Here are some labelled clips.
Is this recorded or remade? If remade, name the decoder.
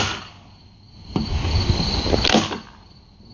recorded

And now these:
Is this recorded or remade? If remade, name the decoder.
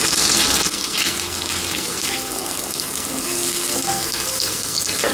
remade, codec, SNAC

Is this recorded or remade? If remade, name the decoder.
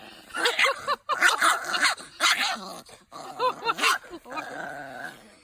recorded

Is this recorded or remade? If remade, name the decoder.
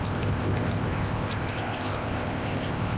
remade, codec, ZipCodec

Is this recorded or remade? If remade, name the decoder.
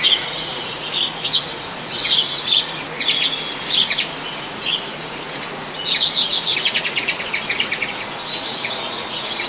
remade, vocoder, Vocos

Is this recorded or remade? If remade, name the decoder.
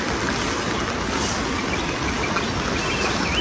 recorded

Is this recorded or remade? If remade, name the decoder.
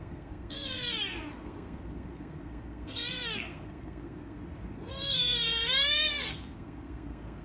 remade, codec, SNAC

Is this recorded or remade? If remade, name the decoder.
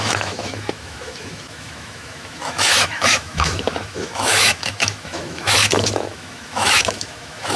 remade, autoencoder, DAC-VAE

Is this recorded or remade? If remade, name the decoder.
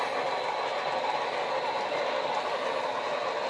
recorded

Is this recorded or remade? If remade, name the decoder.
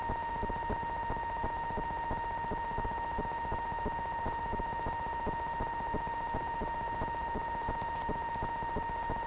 recorded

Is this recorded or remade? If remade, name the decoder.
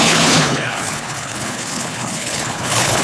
remade, codec, HILCodec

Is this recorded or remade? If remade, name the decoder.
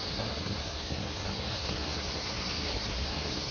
remade, codec, SNAC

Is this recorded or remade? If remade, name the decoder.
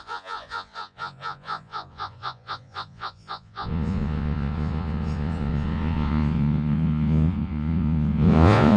remade, vocoder, Vocos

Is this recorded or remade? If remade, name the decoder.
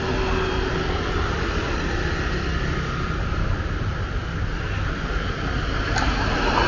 recorded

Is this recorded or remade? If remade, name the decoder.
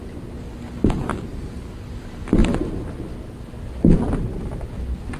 recorded